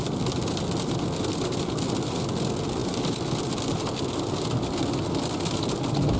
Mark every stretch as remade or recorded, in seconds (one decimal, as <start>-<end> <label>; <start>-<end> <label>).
0.0-6.2 recorded